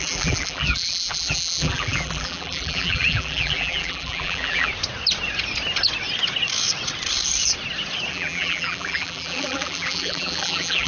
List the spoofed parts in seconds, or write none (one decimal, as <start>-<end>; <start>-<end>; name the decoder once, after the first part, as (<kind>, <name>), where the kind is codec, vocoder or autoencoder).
0.0-4.7 (vocoder, BigVGAN v2); 8.1-10.9